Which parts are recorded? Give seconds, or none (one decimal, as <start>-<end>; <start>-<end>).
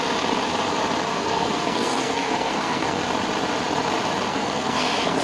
0.0-1.1; 3.0-4.3